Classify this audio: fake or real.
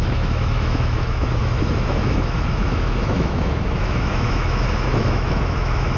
fake